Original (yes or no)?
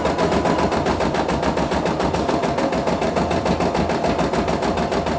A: yes